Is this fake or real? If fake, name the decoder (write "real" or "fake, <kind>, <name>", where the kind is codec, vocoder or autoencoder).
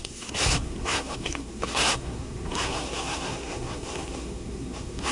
fake, codec, SNAC